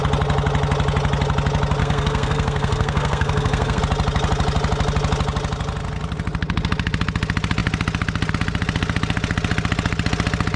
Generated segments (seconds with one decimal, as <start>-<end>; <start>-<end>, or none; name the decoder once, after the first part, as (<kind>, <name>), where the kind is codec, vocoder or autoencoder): 1.8-3.8 (codec, SNAC)